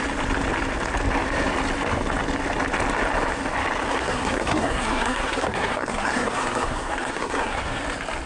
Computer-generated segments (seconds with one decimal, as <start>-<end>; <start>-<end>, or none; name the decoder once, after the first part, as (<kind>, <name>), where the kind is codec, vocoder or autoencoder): 3.9-7.8 (codec, SNAC)